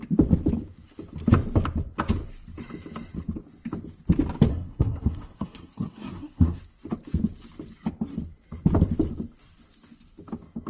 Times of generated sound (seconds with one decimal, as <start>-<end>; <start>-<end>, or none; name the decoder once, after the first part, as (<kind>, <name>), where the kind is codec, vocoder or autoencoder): 4.5-6.6 (codec, SNAC)